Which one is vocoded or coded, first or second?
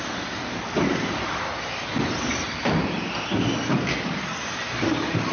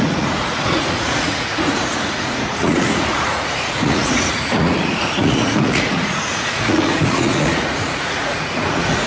second